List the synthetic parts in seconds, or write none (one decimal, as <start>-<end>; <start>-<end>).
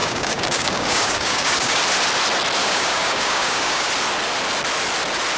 0.0-1.8; 2.6-3.9